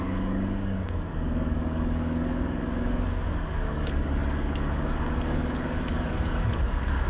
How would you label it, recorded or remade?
remade